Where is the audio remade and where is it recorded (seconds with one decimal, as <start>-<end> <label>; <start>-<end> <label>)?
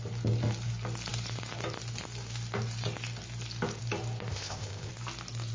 0.0-4.3 recorded; 4.3-4.9 remade; 4.9-5.5 recorded